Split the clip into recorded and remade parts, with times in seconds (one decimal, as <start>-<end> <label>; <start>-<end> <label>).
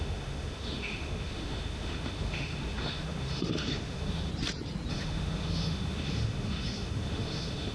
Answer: 0.0-4.3 remade; 4.3-4.9 recorded; 4.9-7.7 remade